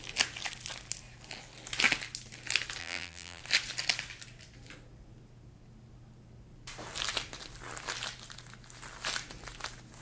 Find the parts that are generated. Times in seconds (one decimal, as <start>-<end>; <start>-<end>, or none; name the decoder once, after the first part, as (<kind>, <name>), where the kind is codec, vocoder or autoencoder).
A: 2.8-3.4 (vocoder, BigVGAN v2)